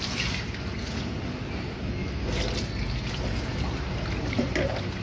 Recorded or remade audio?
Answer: recorded